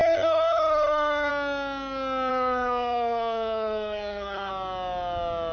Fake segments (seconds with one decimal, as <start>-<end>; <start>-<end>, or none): 0.0-1.3; 2.3-4.5